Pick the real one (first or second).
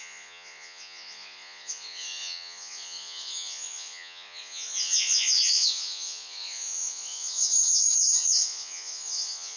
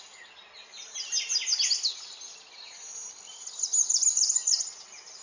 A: second